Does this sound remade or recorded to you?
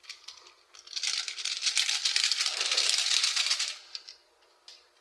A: recorded